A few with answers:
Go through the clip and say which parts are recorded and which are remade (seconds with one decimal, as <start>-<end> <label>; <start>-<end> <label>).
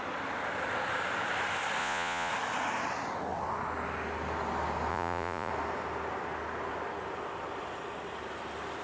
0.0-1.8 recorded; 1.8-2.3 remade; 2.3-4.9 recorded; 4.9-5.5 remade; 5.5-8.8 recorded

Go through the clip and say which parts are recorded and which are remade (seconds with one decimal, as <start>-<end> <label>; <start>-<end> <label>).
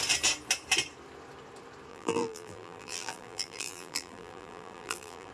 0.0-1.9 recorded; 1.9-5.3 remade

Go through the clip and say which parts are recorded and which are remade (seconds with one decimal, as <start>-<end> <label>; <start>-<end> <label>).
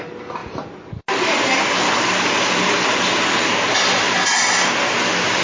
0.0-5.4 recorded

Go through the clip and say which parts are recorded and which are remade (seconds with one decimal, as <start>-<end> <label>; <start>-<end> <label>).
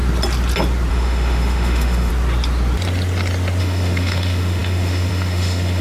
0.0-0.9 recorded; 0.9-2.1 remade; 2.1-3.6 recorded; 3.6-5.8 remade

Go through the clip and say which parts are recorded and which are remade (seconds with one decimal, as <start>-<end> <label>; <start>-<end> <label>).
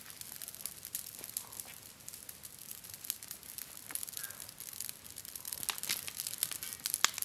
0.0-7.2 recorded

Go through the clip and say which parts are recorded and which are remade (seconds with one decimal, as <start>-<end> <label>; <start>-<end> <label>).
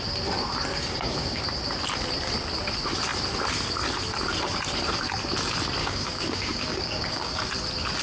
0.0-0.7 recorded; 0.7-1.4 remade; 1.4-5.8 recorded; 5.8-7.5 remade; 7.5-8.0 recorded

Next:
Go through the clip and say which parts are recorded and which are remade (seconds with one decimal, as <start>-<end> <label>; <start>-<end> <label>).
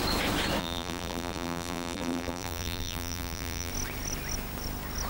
0.0-0.6 recorded; 0.6-3.7 remade; 3.7-5.1 recorded